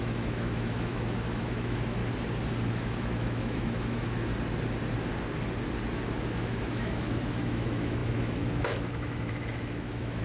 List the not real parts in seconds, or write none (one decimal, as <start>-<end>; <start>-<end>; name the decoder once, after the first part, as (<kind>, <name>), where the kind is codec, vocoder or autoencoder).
0.0-2.0 (autoencoder, DAC-VAE); 2.7-4.3; 6.2-10.2